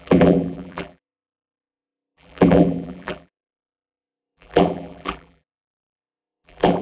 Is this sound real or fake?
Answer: fake